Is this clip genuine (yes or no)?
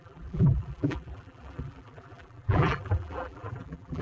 no